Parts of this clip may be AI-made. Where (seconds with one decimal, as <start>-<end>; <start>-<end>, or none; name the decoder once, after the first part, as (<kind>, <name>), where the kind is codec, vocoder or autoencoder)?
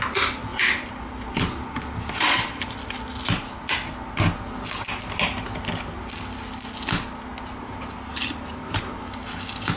0.5-3.0 (vocoder, BigVGAN v2)